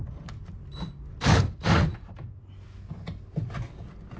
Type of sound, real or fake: real